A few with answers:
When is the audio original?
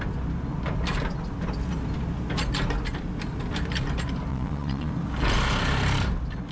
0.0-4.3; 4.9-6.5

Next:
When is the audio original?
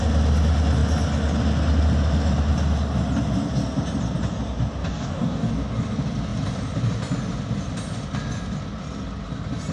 0.0-4.8; 5.5-9.7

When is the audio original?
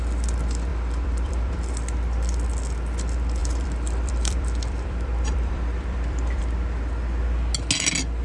0.0-0.7; 1.7-3.4; 6.4-8.2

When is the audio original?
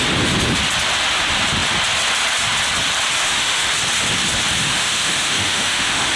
0.0-3.2; 3.7-4.6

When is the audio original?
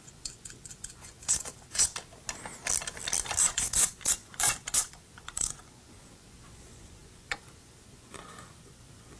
1.9-3.4